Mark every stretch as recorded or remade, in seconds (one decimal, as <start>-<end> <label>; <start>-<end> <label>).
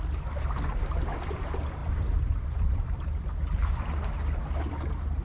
0.0-5.2 recorded